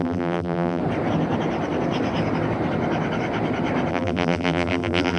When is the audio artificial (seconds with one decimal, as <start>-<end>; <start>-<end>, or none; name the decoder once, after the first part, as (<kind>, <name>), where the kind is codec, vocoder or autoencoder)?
0.0-0.8 (vocoder, BigVGAN v2); 3.9-5.2